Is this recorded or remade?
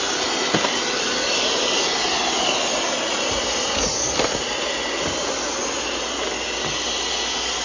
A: recorded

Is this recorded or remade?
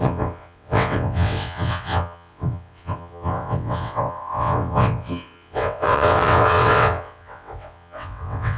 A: remade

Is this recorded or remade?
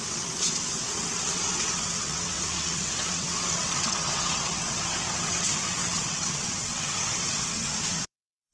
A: remade